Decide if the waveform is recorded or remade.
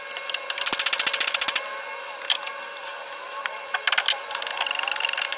recorded